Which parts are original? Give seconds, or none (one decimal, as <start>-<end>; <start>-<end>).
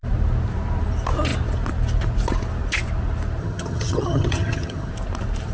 0.0-3.4; 4.9-5.5